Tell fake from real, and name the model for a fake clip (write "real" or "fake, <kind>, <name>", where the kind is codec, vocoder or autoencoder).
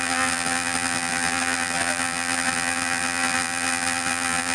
fake, vocoder, BigVGAN v2